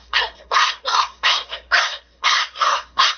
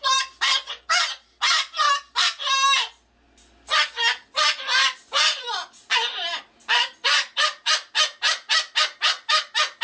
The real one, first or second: second